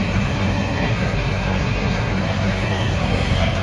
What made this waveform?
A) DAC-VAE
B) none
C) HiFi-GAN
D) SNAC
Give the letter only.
D